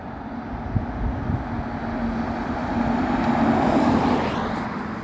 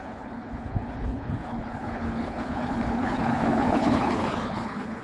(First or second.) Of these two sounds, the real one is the first